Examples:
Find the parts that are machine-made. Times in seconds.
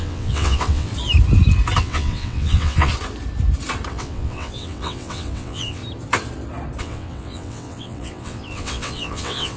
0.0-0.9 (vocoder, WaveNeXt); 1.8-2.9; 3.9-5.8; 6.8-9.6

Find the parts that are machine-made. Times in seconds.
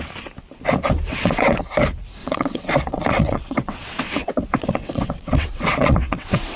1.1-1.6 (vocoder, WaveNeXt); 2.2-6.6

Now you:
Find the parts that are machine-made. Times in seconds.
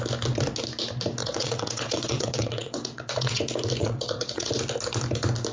1.2-3.4 (vocoder, WaveNeXt); 3.8-4.5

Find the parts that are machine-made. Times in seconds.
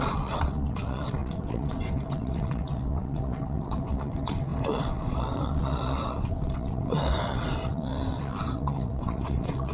0.0-9.7 (vocoder, WaveNeXt)